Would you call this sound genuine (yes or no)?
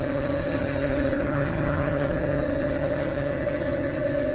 no